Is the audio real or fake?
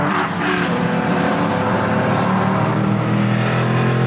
real